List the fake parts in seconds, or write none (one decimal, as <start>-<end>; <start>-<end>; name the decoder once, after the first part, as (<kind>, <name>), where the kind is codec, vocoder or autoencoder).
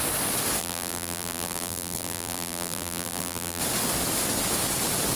0.6-3.6 (vocoder, BigVGAN v2)